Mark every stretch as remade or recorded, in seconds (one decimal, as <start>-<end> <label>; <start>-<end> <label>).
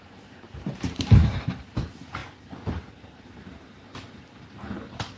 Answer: 0.0-2.2 remade; 2.2-3.1 recorded; 3.1-5.2 remade